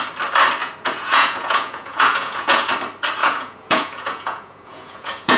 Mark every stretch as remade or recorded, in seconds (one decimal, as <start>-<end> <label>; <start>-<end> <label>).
0.0-0.6 recorded; 0.6-2.7 remade; 2.7-3.2 recorded; 3.2-5.4 remade